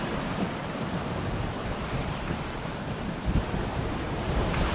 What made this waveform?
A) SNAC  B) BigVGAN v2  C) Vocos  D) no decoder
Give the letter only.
B